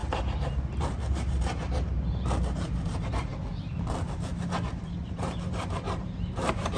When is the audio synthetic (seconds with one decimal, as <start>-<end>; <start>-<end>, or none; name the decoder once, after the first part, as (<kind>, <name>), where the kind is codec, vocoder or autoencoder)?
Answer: 0.7-3.3 (vocoder, BigVGAN v2); 4.7-6.8